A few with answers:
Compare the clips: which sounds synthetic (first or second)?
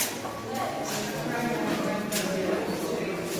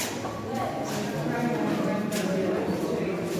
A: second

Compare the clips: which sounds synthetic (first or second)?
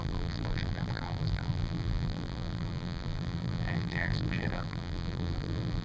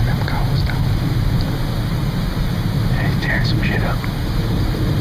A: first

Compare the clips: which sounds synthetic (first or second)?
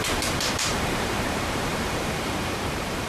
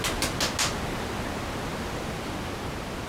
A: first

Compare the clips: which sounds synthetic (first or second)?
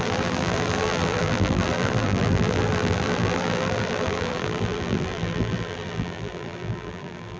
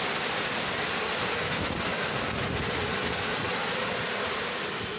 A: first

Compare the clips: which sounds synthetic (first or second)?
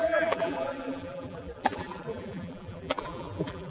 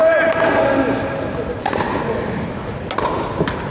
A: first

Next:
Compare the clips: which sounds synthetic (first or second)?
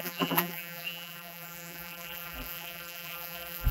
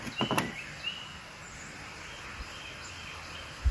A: first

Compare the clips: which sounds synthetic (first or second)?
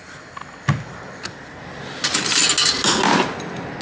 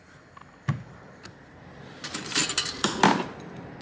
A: second